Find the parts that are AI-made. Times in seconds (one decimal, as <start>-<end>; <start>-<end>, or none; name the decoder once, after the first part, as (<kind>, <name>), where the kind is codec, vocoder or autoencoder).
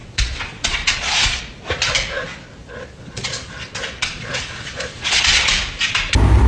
0.0-1.4 (vocoder, Vocos); 2.6-5.5